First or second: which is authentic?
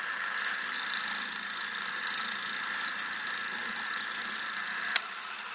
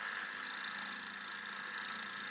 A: second